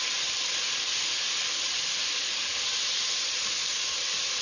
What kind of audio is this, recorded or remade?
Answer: remade